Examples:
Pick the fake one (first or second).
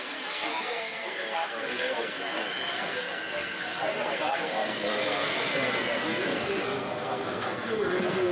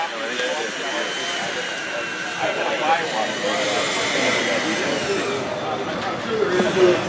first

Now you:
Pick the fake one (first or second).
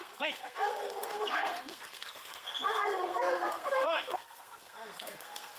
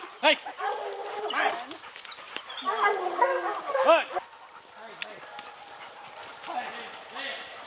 first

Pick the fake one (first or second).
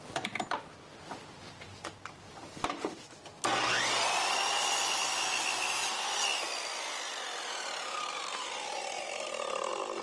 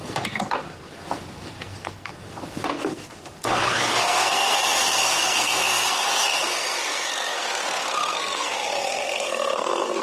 second